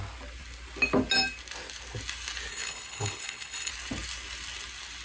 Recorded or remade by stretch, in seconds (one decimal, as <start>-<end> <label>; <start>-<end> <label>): 0.0-2.5 recorded; 2.5-3.7 remade; 3.7-5.0 recorded